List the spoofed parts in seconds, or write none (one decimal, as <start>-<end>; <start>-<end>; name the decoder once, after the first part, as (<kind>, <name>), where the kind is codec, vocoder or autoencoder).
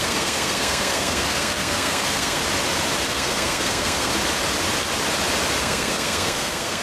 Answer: 0.0-2.4 (codec, SNAC); 3.1-4.1; 5.6-6.8